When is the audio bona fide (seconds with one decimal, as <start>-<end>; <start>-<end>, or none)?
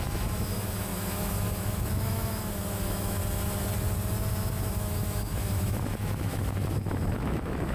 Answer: 3.2-4.3